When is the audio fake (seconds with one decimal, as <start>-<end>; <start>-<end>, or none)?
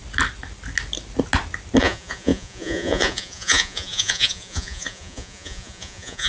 1.8-6.3